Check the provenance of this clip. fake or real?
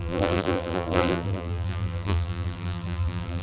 fake